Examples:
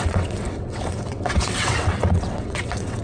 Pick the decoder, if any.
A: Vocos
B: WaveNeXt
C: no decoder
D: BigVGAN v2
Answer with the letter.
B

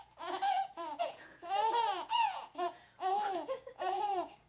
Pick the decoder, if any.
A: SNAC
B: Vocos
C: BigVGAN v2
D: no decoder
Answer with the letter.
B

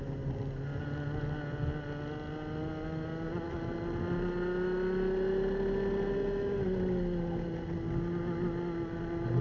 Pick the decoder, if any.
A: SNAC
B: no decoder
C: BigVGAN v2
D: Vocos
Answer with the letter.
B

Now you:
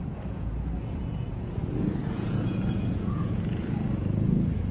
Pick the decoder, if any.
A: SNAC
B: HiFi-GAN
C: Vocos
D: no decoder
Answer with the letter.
C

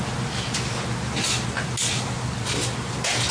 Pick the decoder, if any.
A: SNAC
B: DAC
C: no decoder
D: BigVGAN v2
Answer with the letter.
C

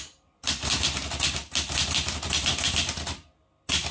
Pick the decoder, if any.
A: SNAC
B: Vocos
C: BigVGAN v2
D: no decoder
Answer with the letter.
D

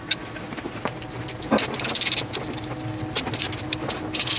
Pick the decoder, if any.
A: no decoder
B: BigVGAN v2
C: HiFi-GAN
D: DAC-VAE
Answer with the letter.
A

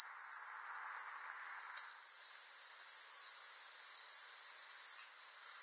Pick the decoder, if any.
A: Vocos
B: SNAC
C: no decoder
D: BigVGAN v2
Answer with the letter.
C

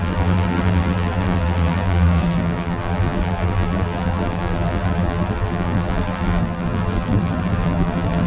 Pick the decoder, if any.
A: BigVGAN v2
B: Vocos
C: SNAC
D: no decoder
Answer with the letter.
A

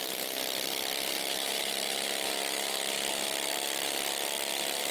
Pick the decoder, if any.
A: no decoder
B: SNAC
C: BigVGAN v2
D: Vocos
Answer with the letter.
A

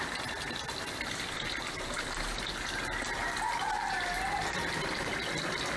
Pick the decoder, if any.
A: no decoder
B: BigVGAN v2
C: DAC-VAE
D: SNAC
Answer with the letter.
A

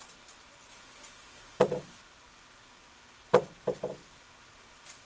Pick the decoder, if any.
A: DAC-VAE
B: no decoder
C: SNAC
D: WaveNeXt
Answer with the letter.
B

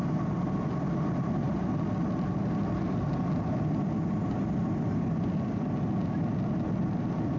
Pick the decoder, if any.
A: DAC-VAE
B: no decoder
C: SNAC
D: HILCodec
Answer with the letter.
B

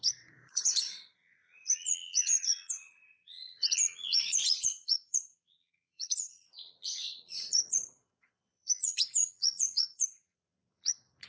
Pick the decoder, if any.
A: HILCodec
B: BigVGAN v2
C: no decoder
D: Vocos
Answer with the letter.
D